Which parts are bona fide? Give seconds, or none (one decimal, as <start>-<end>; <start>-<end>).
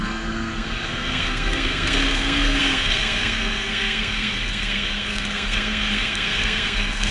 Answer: none